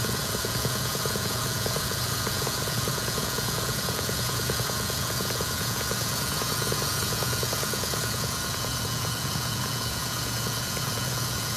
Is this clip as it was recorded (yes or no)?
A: no